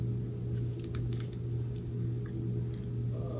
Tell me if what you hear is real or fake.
real